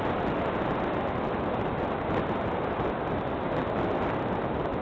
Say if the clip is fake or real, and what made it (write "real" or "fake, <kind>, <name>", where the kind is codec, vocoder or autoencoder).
real